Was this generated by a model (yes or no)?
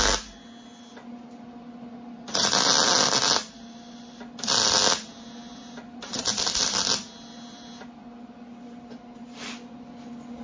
no